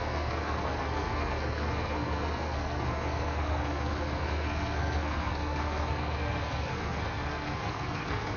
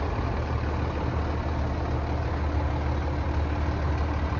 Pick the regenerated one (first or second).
first